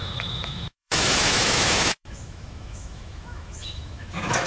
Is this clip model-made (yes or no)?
yes